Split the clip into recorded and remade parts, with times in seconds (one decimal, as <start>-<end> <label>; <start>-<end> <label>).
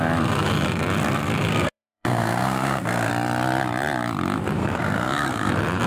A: 0.0-1.5 recorded; 1.5-3.1 remade; 3.1-4.6 recorded; 4.6-5.5 remade; 5.5-5.9 recorded